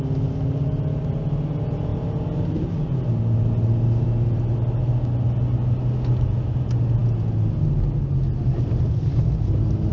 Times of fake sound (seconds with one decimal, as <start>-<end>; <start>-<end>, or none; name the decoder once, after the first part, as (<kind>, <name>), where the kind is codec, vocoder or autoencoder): none